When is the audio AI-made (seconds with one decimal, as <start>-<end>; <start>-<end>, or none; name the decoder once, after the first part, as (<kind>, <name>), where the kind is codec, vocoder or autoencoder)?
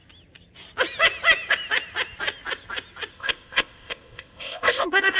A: 3.1-5.2 (codec, ZipCodec)